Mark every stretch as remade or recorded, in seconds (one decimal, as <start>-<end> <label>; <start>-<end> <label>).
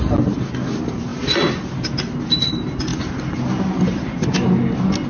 0.0-5.1 recorded